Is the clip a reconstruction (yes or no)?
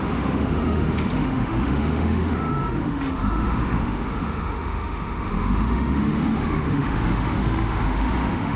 yes